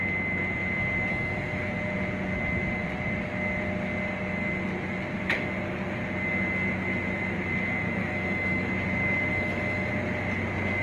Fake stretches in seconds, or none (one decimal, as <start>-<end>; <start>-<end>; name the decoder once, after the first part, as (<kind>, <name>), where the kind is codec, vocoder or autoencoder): 1.1-1.7 (autoencoder, DAC-VAE); 8.0-8.7; 9.3-9.9